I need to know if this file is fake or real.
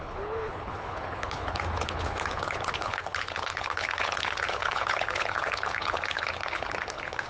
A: fake